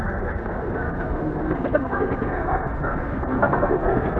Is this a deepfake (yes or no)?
yes